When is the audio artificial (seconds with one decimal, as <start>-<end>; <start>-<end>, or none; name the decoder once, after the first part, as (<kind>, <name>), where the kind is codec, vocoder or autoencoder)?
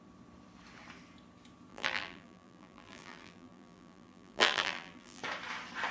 1.7-5.2 (vocoder, BigVGAN v2)